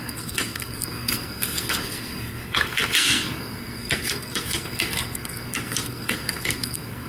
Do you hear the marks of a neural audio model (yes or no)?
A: yes